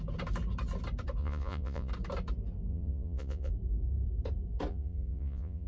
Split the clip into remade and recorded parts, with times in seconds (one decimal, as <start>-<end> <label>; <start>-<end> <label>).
0.0-1.2 recorded; 1.2-1.9 remade; 1.9-2.7 recorded; 2.7-3.5 remade; 3.5-4.7 recorded; 4.7-5.7 remade